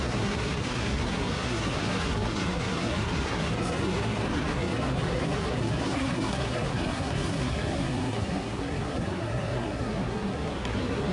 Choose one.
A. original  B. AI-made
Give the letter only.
B